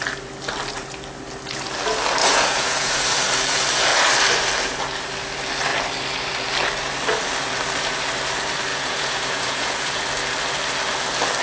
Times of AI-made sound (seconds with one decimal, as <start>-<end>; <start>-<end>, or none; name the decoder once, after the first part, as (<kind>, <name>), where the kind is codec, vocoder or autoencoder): 2.2-3.1 (vocoder, Vocos); 8.7-10.0